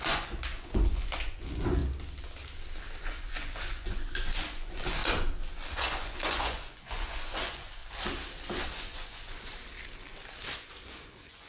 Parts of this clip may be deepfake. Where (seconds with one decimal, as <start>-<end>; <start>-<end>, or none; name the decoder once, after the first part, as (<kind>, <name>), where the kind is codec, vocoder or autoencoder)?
0.0-1.8 (vocoder, Vocos); 3.0-5.0; 5.7-7.8; 8.7-9.5; 10.5-11.5